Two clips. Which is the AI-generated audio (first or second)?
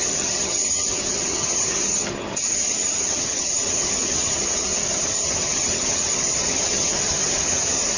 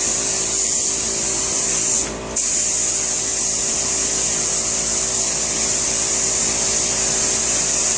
first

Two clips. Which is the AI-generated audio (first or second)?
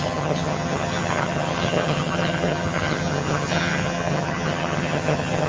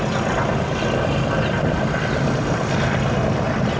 first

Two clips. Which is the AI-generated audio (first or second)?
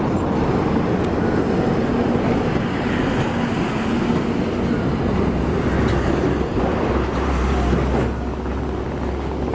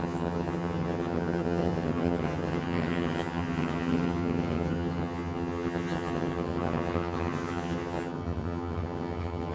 second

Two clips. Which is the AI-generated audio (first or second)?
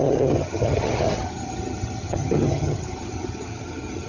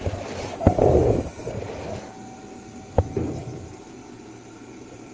first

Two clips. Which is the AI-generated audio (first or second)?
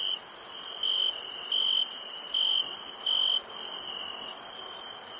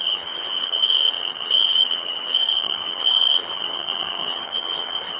second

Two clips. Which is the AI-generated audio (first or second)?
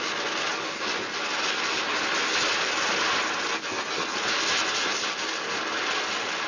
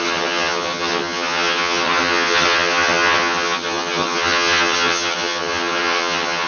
second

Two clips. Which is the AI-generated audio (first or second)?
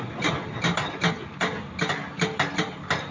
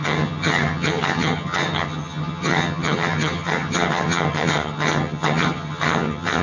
second